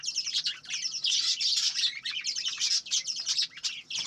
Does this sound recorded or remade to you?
recorded